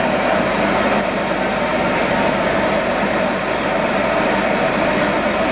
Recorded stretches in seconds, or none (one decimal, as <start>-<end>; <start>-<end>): 0.0-5.5